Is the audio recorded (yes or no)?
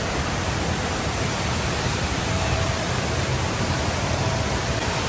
no